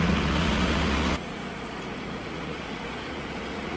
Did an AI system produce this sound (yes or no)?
yes